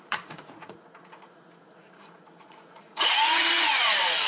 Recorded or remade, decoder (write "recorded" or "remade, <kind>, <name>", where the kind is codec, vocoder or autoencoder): remade, vocoder, Vocos